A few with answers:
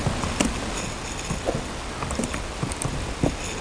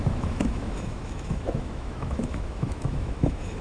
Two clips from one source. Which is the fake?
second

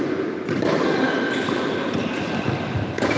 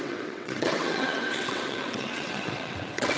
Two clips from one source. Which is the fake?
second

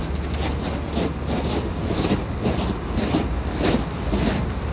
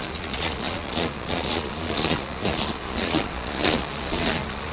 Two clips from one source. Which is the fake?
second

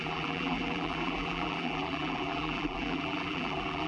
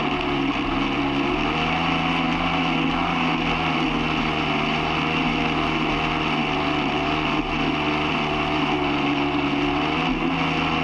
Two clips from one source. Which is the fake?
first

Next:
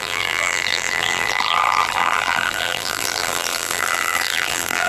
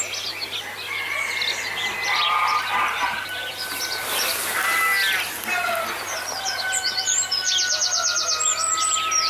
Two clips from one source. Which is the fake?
first